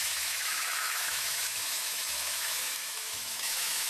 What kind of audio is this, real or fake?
fake